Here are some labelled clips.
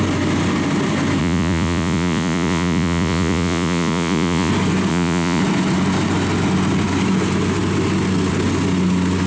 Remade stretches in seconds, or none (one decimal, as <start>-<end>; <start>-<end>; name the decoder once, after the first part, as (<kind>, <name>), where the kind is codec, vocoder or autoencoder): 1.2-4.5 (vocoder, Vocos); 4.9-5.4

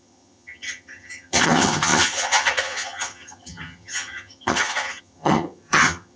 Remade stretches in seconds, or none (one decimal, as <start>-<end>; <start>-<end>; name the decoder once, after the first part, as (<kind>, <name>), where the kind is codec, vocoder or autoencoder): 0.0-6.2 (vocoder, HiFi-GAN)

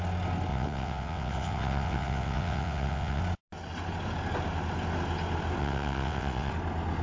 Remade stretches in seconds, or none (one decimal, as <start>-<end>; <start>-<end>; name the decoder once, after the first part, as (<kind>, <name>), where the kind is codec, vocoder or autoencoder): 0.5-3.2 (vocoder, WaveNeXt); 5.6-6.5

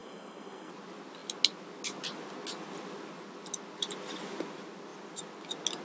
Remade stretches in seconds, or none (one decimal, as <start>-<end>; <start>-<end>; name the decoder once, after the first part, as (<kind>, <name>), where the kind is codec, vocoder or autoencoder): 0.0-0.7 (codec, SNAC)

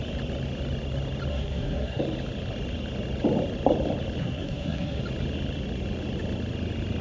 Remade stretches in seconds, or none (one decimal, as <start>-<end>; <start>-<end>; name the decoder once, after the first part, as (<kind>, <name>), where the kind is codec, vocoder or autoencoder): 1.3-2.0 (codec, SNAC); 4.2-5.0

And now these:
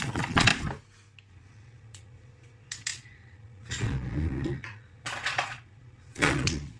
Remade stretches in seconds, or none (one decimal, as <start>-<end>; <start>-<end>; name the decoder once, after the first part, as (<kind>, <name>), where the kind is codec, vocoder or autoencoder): 0.0-0.5 (vocoder, Vocos); 1.3-6.8

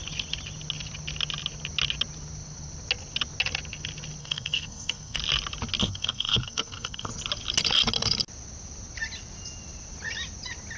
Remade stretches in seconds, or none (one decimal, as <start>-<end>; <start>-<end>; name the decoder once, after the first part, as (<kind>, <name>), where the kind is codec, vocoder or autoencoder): 4.2-5.2 (codec, SNAC); 5.8-7.1

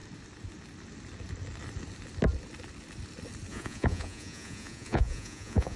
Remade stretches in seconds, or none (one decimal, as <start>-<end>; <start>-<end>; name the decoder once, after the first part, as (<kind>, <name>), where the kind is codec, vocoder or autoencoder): 3.5-5.8 (vocoder, Vocos)